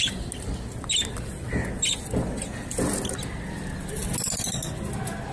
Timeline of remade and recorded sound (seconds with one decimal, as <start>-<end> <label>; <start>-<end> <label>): 0.0-5.3 recorded